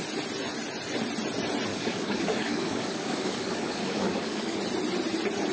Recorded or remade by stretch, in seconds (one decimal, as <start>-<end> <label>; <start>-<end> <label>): 0.0-1.7 recorded; 1.7-4.6 remade; 4.6-5.5 recorded